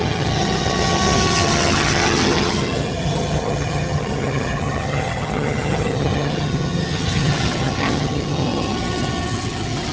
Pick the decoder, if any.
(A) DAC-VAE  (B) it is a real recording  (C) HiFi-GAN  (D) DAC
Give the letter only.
C